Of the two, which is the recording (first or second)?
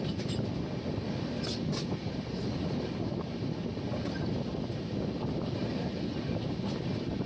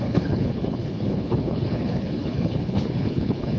first